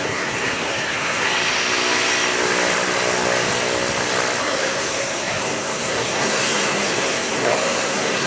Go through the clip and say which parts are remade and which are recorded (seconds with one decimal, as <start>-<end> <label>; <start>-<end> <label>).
0.0-1.3 remade; 1.3-4.4 recorded; 4.4-8.3 remade